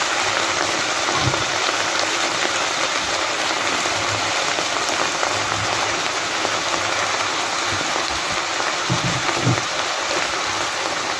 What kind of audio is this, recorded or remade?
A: recorded